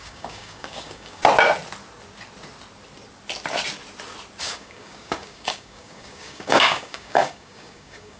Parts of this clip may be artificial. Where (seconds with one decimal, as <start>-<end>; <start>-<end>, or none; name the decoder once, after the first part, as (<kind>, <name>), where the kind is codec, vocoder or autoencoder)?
0.0-1.2 (codec, DAC); 4.4-8.2